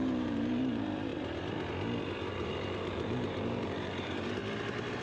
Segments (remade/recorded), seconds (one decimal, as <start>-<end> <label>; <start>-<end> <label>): 0.0-1.1 remade; 1.1-2.2 recorded; 2.2-4.4 remade; 4.4-5.0 recorded